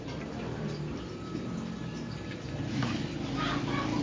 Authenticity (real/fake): real